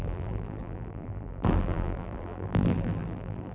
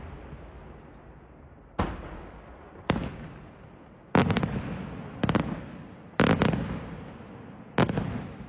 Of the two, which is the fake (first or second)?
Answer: first